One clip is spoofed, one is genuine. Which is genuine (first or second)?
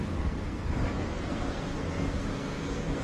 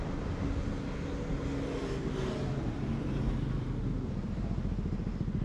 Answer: second